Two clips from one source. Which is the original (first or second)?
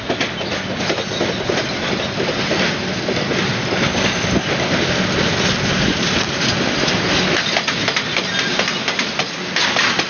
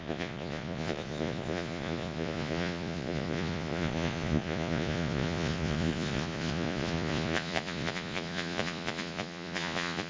first